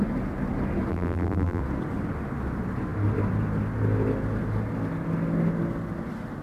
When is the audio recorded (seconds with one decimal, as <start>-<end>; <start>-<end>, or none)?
0.0-0.9; 1.6-6.4

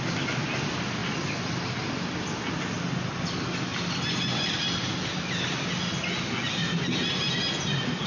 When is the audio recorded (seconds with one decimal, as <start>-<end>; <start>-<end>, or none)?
0.0-8.1

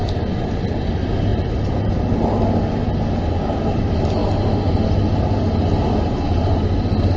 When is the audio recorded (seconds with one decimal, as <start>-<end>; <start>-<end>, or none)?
0.0-1.3; 2.3-7.2

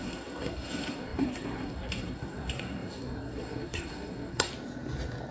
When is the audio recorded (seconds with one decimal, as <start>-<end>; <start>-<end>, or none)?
4.5-5.3

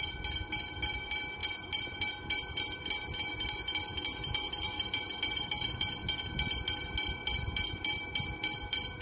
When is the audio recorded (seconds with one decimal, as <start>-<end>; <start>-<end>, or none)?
0.0-3.9; 5.9-9.0

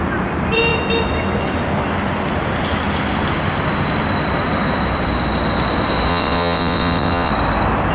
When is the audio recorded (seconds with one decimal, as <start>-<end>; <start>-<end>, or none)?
0.0-6.1; 7.3-7.9

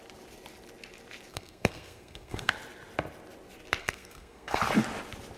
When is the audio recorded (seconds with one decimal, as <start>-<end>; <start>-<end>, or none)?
0.0-1.3; 2.5-3.8; 4.6-5.4

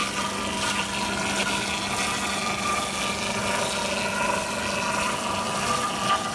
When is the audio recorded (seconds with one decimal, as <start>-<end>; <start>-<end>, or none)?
0.0-6.3